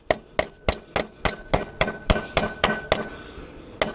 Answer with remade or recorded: recorded